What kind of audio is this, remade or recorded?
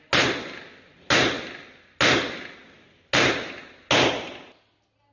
recorded